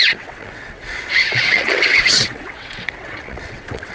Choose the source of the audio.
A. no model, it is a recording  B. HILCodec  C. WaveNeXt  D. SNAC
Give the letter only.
C